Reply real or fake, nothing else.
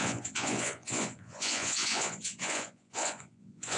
fake